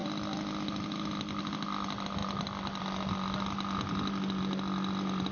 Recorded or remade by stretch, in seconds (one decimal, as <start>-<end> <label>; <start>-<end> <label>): 0.0-5.3 recorded